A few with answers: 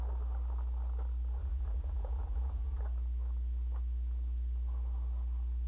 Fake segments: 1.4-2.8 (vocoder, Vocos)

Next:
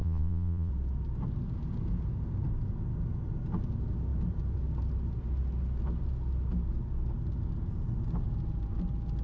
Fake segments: 0.0-0.7 (vocoder, Vocos)

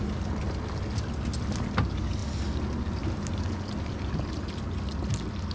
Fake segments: none

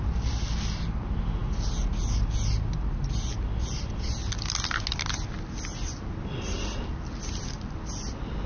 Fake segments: none